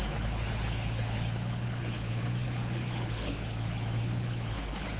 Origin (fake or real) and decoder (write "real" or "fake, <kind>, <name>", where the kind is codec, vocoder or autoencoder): fake, codec, HILCodec